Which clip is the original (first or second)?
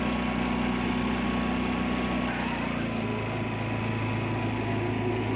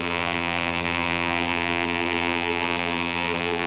first